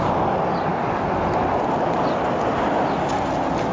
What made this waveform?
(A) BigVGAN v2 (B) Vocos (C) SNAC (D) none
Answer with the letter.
D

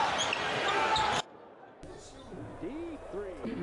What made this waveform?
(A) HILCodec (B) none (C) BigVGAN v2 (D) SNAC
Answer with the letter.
B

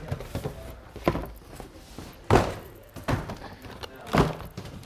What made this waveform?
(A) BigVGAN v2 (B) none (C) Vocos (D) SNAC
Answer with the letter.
B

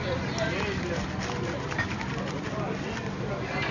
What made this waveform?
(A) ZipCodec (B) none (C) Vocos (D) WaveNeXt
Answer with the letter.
B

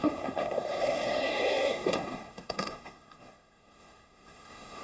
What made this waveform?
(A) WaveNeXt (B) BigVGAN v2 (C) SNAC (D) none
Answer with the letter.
C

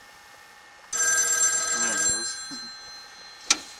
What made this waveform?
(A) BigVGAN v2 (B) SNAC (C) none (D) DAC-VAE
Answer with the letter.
C